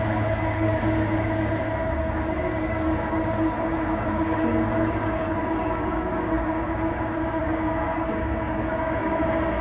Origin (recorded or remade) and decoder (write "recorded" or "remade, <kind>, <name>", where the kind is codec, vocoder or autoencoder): remade, codec, DAC